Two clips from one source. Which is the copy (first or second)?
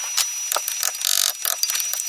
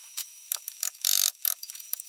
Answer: second